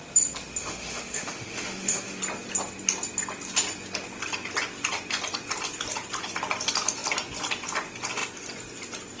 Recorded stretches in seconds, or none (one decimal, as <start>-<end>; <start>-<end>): 0.0-0.6; 2.2-9.2